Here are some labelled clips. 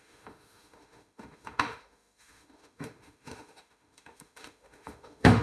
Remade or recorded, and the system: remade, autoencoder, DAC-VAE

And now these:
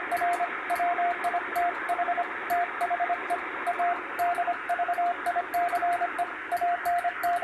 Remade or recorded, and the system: recorded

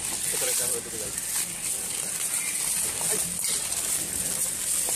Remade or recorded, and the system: recorded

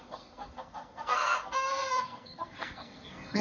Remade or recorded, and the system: remade, codec, SNAC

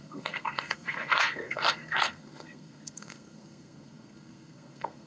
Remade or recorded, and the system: remade, codec, SNAC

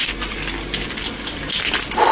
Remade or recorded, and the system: recorded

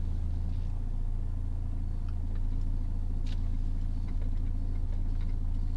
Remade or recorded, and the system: recorded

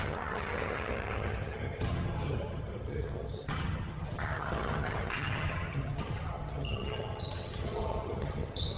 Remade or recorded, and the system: remade, vocoder, HiFi-GAN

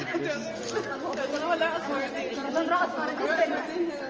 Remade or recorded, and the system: recorded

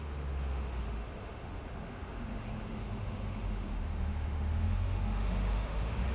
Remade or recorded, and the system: remade, autoencoder, DAC-VAE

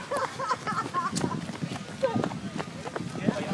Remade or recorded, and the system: recorded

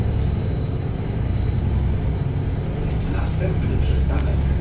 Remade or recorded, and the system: recorded